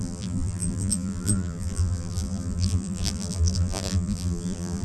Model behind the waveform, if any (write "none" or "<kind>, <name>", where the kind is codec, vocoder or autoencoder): vocoder, BigVGAN v2